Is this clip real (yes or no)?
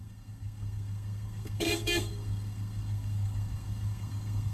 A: no